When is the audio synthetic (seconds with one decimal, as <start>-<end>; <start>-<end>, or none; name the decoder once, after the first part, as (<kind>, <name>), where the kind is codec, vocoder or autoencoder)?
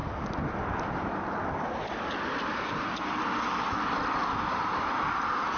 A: none